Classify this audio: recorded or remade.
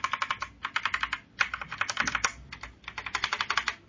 recorded